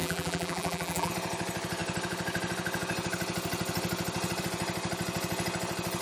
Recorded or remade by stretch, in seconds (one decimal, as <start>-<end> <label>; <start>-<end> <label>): 0.0-1.1 remade; 1.1-6.0 recorded